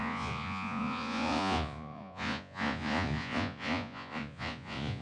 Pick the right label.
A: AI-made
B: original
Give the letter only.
A